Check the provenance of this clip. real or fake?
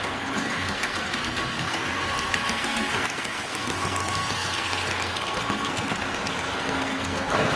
fake